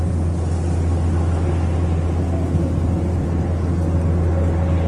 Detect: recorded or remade recorded